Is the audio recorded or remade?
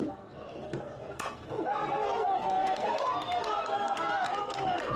remade